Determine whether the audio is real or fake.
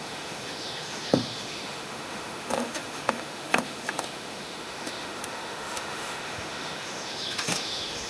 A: fake